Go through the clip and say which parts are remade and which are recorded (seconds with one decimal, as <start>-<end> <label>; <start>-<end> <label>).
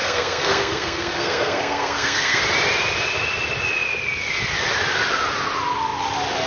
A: 0.0-2.4 remade; 2.4-6.5 recorded